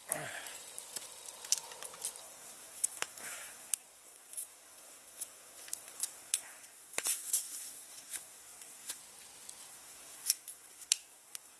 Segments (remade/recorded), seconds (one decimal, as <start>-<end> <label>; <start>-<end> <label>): 0.0-2.2 recorded; 2.2-9.0 remade; 9.0-9.7 recorded; 9.7-11.6 remade